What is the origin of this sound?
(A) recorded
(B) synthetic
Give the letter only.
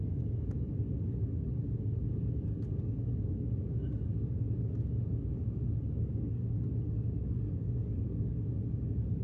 B